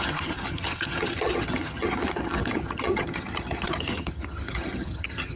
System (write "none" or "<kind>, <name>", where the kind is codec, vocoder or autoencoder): vocoder, HiFi-GAN